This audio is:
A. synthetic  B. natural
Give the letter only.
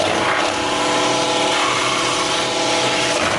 B